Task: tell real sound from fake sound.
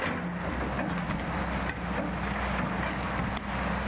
real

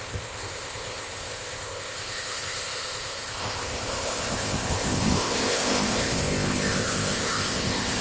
fake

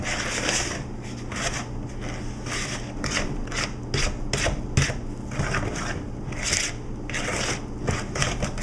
real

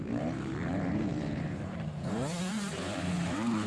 fake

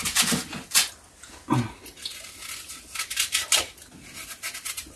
real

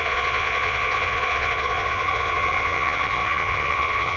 fake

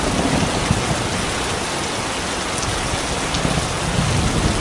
real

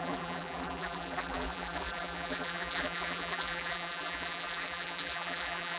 fake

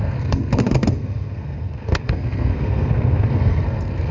fake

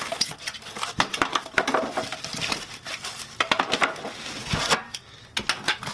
real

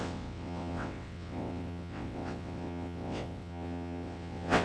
fake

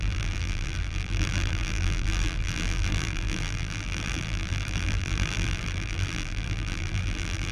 fake